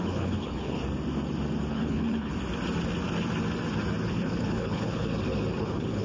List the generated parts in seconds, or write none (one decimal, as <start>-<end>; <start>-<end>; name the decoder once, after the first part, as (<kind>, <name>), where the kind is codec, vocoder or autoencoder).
0.0-0.8 (codec, HILCodec); 1.7-2.3; 4.1-5.1; 5.6-6.0